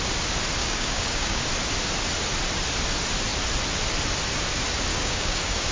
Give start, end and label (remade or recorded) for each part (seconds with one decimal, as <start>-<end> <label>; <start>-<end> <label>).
0.0-0.6 recorded; 0.6-1.4 remade; 1.4-4.9 recorded; 4.9-5.7 remade